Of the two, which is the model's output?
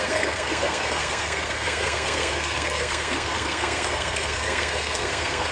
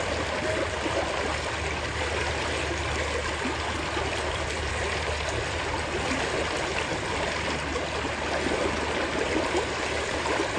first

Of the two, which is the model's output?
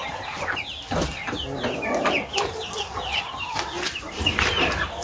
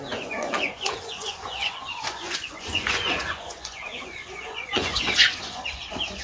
second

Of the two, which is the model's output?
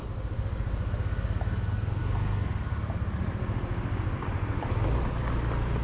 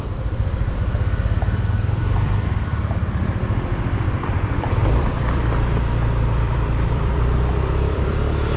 second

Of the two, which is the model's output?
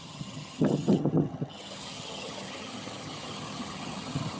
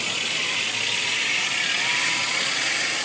first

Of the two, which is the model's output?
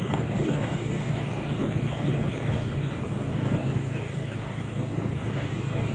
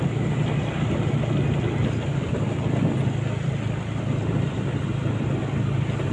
first